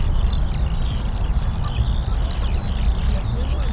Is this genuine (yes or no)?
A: yes